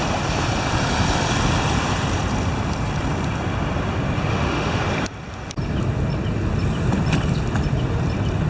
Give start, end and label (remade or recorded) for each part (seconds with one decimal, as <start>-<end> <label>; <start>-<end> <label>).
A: 0.0-4.3 recorded; 4.3-4.8 remade; 4.8-8.5 recorded